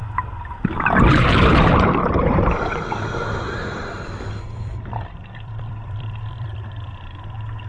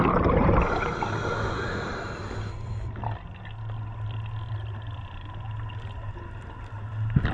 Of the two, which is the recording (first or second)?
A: second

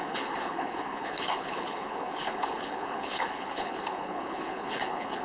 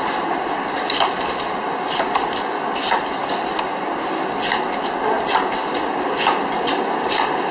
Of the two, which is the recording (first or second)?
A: second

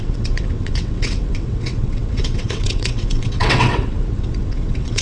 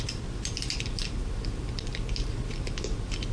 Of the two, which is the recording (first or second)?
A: second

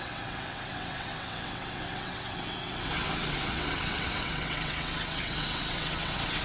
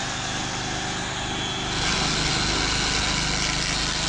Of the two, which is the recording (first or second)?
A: second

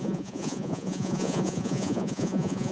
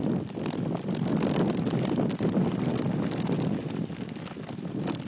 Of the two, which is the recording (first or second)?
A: second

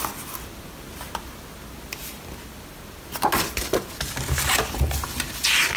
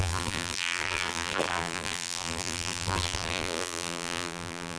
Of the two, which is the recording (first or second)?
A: first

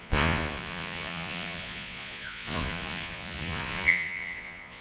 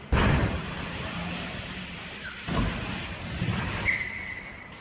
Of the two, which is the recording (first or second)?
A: second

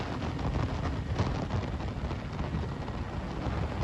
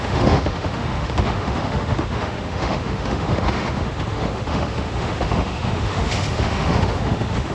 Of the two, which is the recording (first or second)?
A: first